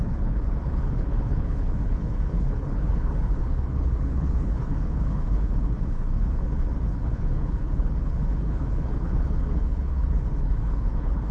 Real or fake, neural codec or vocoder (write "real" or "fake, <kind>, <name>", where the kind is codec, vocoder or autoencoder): fake, codec, HILCodec